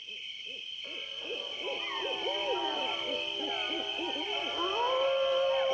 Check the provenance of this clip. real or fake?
real